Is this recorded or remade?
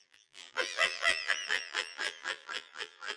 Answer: remade